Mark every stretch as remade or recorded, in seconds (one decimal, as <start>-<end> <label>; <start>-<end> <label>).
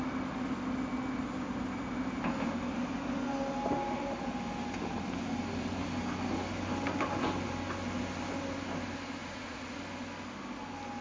0.0-9.2 recorded; 9.2-9.8 remade; 9.8-11.0 recorded